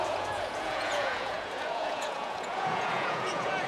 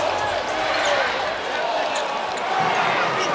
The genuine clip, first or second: second